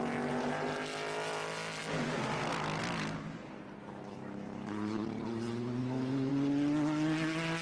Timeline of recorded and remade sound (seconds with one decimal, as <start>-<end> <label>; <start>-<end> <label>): 0.0-3.8 recorded; 3.8-4.7 remade; 4.7-5.8 recorded; 5.8-6.3 remade; 6.3-7.6 recorded